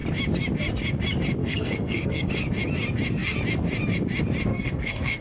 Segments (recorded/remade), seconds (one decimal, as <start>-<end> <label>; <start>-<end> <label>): 0.0-1.4 recorded; 1.4-2.3 remade; 2.3-4.5 recorded; 4.5-5.2 remade